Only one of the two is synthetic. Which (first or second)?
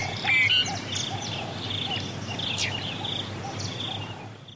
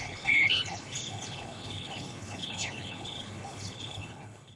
second